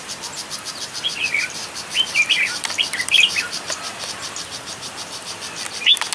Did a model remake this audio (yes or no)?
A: yes